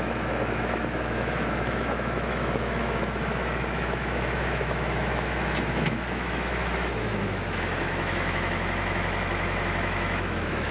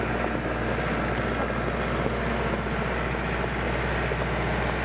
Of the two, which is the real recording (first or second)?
second